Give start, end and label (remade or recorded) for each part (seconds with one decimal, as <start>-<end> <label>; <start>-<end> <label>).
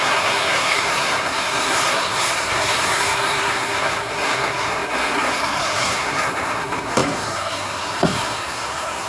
0.0-9.1 remade